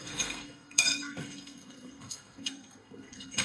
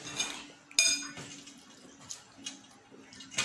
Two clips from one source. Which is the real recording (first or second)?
second